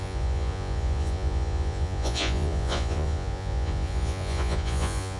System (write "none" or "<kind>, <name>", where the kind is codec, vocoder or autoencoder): vocoder, Vocos